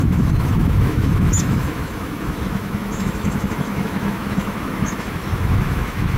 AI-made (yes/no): yes